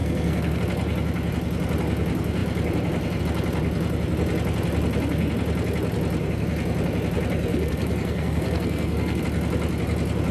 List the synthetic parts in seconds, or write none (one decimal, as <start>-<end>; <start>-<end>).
0.0-0.6; 7.5-9.2

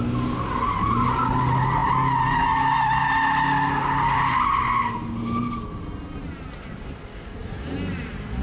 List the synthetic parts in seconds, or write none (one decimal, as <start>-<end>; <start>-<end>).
none